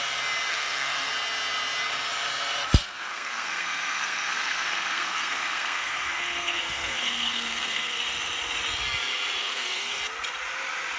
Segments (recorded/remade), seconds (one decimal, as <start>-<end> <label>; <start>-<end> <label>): 0.0-0.5 recorded; 0.5-1.1 remade; 1.1-2.8 recorded; 2.8-8.0 remade; 8.0-9.4 recorded; 9.4-10.0 remade; 10.0-11.0 recorded